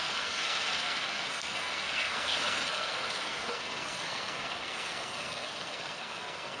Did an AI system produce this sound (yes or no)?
yes